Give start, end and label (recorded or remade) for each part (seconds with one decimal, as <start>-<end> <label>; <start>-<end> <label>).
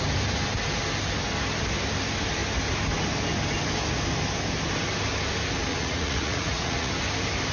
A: 0.0-5.7 recorded; 5.7-6.9 remade; 6.9-7.5 recorded